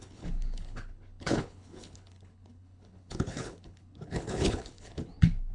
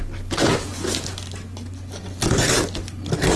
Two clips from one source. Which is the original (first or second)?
second